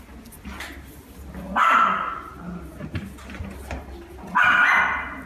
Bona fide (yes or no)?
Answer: yes